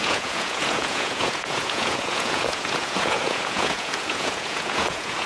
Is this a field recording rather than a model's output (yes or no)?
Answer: no